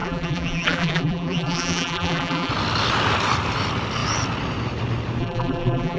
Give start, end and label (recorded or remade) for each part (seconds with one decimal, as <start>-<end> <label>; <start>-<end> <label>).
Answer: 0.0-2.5 remade; 2.5-5.2 recorded; 5.2-6.0 remade